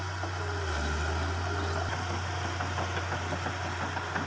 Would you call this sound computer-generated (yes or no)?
no